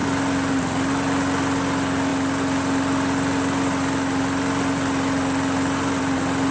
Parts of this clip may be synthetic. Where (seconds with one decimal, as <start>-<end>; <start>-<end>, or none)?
none